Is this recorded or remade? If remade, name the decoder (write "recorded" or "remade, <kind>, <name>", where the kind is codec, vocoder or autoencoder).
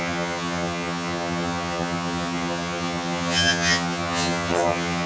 remade, vocoder, HiFi-GAN